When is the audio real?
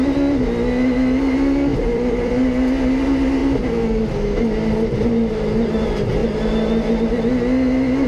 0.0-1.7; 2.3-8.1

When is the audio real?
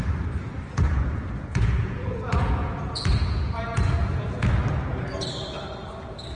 0.0-0.7; 4.5-6.3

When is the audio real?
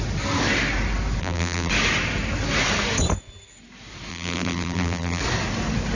0.0-1.2; 1.7-4.1; 5.2-5.9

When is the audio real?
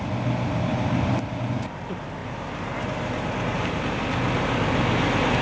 0.0-0.7; 1.4-5.4